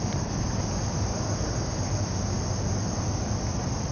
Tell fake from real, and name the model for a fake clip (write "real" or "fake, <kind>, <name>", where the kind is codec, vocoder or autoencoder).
real